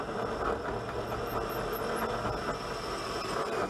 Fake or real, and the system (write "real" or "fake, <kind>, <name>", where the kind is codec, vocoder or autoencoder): real